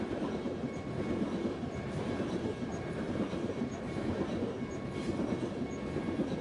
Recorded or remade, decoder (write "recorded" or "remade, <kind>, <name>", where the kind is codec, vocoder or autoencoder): recorded